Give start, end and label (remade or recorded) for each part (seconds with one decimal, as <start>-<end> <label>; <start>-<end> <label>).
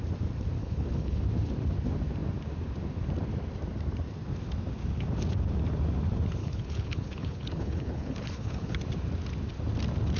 0.0-0.6 recorded; 0.6-1.2 remade; 1.2-6.4 recorded; 6.4-8.8 remade; 8.8-10.2 recorded